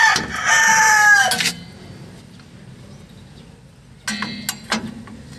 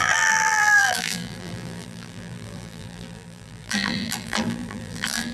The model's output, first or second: second